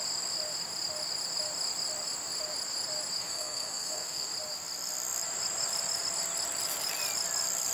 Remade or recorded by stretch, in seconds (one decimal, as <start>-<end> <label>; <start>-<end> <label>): 0.0-3.2 recorded; 3.2-4.3 remade; 4.3-7.7 recorded